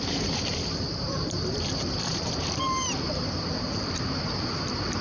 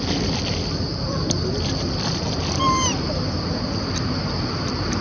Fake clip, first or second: first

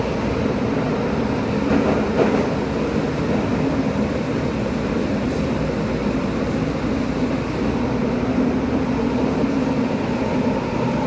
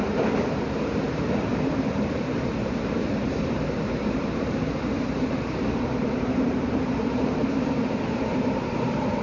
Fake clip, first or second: second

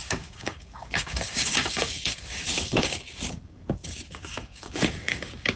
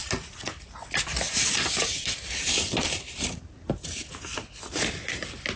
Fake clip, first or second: first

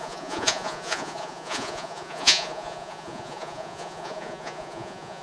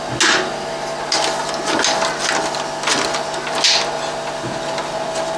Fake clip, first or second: first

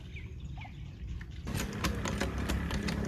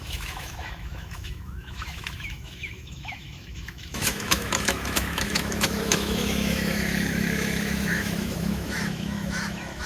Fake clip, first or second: second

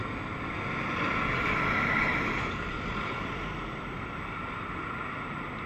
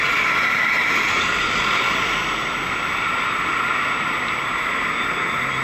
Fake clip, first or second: first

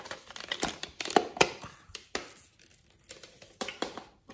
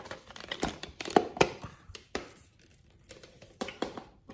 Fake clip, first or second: second